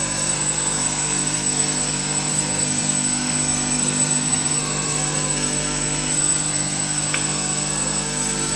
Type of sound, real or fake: fake